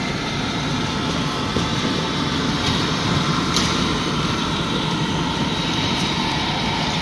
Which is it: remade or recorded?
remade